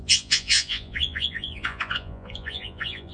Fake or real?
fake